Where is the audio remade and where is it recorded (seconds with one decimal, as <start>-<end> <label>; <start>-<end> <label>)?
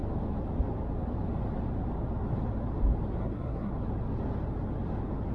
0.0-3.2 recorded; 3.2-3.7 remade; 3.7-5.3 recorded